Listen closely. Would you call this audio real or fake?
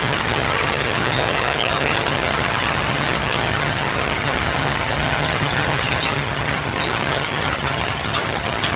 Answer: fake